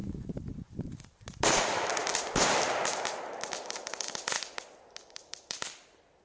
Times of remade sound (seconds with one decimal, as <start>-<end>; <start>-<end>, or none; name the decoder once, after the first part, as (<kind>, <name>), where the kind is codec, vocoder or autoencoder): none